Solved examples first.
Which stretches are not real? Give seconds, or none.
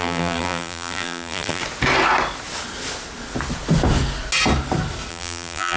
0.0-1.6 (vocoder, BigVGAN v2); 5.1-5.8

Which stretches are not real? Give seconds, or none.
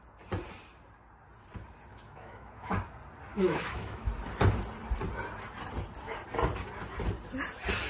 1.9-2.7 (autoencoder, DAC-VAE); 3.3-4.1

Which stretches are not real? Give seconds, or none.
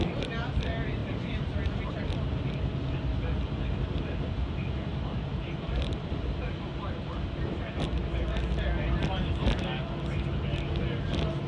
1.0-1.9 (vocoder, BigVGAN v2); 4.9-6.2; 6.7-7.5